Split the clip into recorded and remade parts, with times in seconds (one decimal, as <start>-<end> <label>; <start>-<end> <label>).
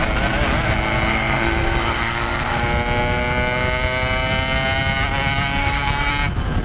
0.0-1.1 recorded; 1.1-2.6 remade; 2.6-5.6 recorded; 5.6-6.1 remade; 6.1-6.6 recorded